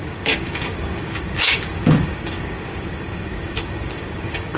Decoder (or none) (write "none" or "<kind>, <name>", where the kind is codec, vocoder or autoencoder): codec, DAC